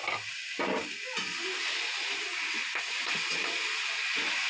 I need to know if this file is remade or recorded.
recorded